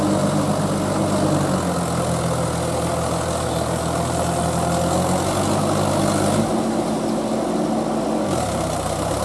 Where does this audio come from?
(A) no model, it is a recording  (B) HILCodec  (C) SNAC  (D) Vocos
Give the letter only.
A